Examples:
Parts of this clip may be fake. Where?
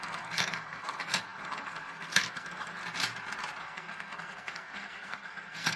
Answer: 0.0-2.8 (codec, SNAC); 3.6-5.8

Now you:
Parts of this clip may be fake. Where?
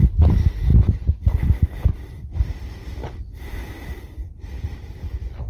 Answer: none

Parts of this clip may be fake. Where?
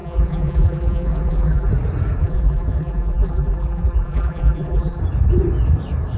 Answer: 0.0-1.7 (vocoder, BigVGAN v2); 2.2-5.0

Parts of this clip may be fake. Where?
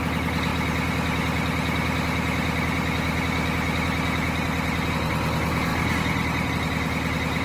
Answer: none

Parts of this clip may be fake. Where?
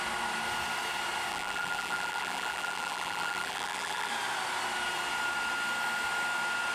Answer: 1.3-4.1 (vocoder, BigVGAN v2)